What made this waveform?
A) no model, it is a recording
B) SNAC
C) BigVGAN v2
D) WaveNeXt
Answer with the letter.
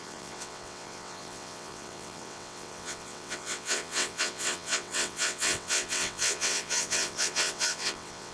D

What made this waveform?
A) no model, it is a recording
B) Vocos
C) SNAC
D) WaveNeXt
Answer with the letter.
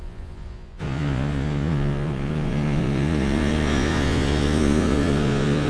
B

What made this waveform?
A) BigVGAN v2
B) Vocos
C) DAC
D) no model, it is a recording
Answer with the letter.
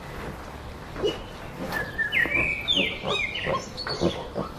D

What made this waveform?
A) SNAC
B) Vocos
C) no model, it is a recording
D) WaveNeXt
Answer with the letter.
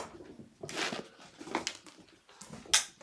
C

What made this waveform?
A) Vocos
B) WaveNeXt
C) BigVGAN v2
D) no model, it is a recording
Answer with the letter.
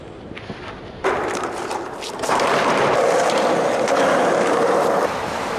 C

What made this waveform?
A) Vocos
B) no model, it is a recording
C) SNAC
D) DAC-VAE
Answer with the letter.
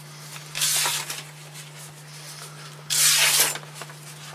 B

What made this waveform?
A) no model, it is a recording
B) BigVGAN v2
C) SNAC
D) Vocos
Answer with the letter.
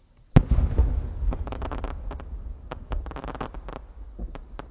A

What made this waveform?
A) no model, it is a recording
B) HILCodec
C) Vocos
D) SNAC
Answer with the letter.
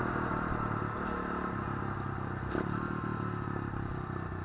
A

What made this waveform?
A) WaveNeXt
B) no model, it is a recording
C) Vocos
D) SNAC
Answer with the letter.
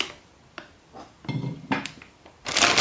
B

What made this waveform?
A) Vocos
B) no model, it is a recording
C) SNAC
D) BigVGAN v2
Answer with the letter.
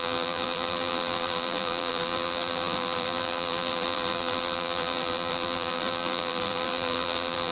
D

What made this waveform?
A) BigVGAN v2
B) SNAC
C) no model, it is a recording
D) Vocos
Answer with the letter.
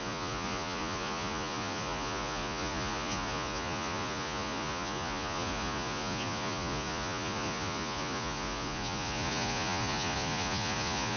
D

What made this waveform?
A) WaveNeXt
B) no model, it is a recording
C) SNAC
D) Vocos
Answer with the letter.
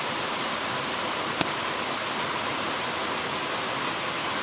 B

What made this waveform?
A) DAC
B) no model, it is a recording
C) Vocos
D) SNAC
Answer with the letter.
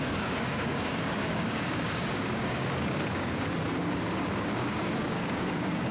A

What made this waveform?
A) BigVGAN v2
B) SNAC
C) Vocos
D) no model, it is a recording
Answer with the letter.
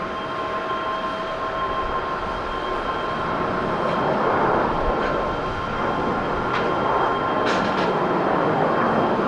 D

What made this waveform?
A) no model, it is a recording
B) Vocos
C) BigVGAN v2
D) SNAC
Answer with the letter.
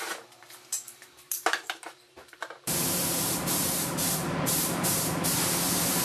C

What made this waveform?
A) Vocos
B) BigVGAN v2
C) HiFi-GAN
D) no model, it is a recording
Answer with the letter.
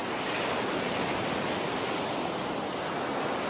D